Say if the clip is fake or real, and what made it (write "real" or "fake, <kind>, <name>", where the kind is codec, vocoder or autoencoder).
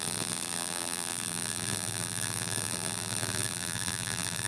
fake, vocoder, BigVGAN v2